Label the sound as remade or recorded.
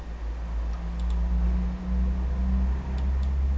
recorded